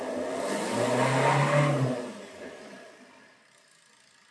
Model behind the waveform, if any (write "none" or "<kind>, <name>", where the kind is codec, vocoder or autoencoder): none